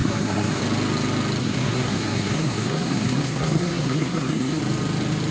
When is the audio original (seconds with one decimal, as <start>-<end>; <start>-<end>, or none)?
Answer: 0.6-1.4; 4.6-5.3